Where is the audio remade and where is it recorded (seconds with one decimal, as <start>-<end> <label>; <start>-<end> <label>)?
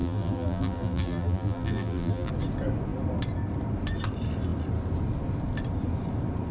0.0-2.3 remade; 2.3-6.5 recorded